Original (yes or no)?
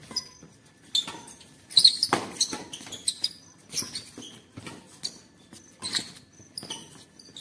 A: yes